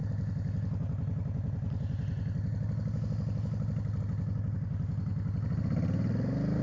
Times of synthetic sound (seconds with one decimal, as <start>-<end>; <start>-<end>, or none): none